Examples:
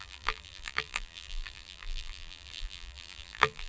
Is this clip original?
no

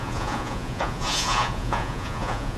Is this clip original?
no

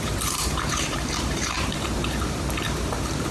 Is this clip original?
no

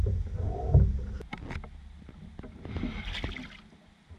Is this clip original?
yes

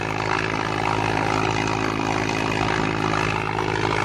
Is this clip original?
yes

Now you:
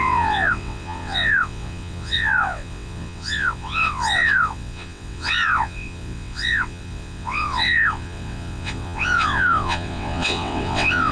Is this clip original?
no